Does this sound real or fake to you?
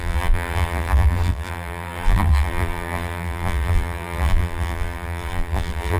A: fake